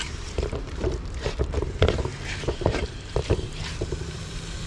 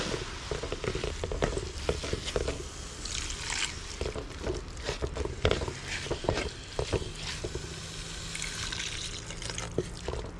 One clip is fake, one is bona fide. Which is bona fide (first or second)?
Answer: second